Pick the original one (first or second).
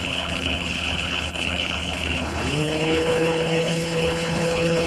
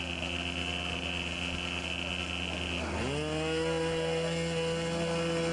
second